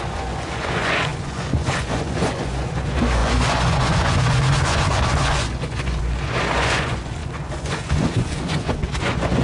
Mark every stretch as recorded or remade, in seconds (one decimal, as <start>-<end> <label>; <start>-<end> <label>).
0.0-9.4 remade